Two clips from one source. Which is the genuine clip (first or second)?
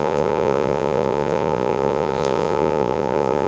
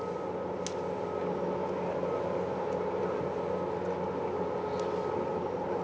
second